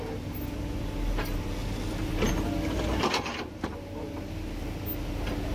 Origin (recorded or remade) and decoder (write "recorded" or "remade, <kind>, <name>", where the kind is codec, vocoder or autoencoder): recorded